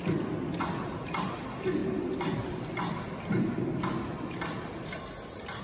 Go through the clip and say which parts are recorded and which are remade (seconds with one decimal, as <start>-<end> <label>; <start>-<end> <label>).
0.0-5.6 recorded